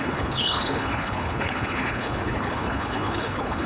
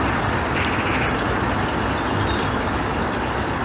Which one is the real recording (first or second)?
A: second